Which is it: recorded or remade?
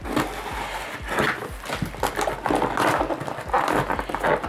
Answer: recorded